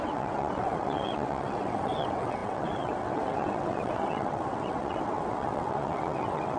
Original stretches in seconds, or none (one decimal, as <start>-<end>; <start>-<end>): none